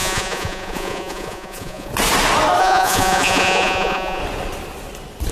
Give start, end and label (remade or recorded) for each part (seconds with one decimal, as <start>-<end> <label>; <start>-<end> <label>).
0.0-1.9 remade; 1.9-2.6 recorded; 2.6-4.2 remade; 4.2-5.3 recorded